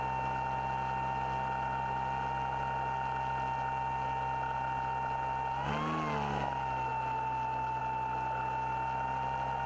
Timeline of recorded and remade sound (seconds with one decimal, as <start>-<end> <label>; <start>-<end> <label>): 0.0-9.7 recorded